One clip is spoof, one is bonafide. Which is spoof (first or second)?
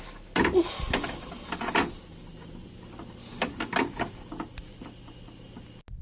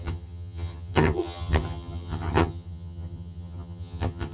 second